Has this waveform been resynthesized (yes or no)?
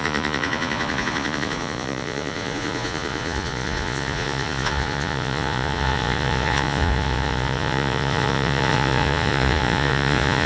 yes